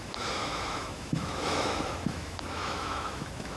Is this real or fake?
fake